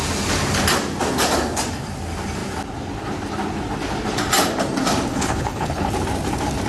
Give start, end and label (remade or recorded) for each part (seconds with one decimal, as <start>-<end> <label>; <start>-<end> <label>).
0.0-5.1 recorded; 5.1-5.9 remade; 5.9-6.7 recorded

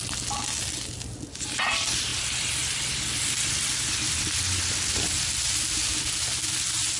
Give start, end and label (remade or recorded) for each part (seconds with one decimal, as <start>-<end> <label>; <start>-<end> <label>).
0.0-7.0 recorded

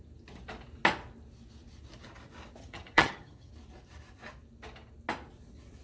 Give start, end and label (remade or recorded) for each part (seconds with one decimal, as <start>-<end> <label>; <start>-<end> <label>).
0.0-2.6 recorded; 2.6-3.5 remade; 3.5-5.8 recorded

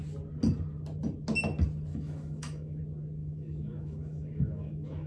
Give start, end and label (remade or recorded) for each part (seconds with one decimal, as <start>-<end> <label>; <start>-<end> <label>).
0.0-1.9 recorded; 1.9-2.8 remade; 2.8-3.2 recorded; 3.2-5.1 remade

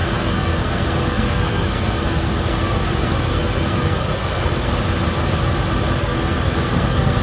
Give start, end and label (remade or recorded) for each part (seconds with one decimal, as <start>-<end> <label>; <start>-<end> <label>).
0.0-4.7 remade; 4.7-6.0 recorded; 6.0-7.2 remade

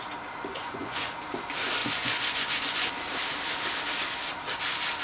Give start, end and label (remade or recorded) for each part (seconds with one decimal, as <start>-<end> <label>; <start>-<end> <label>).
0.0-0.5 recorded; 0.5-1.1 remade; 1.1-1.8 recorded; 1.8-2.9 remade; 2.9-5.0 recorded

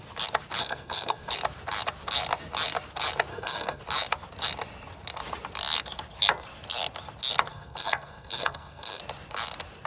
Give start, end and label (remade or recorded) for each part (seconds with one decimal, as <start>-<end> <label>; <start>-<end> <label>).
0.0-0.6 recorded; 0.6-1.3 remade; 1.3-3.3 recorded; 3.3-3.8 remade; 3.8-7.5 recorded; 7.5-9.0 remade; 9.0-9.9 recorded

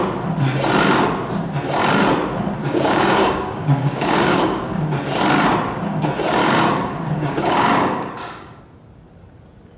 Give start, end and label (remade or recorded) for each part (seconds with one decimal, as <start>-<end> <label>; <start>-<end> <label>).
0.0-2.6 recorded; 2.6-4.8 remade; 4.8-6.4 recorded; 6.4-8.6 remade; 8.6-9.8 recorded